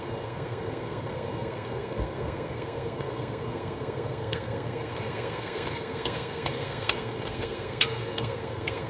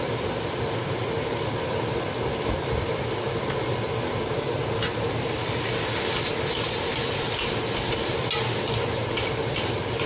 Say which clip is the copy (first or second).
first